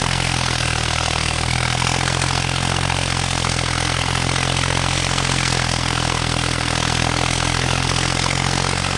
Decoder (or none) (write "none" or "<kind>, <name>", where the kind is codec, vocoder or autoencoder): codec, SNAC